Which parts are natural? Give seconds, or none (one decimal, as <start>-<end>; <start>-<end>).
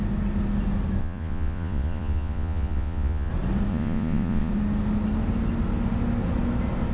0.0-1.0; 3.3-3.7; 4.5-6.9